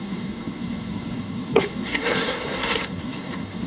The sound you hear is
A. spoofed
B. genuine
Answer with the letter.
A